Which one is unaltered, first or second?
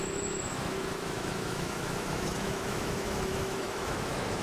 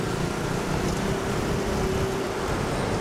second